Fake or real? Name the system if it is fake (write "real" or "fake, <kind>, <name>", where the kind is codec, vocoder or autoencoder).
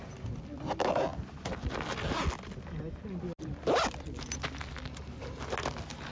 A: real